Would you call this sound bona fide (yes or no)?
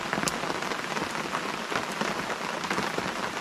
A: yes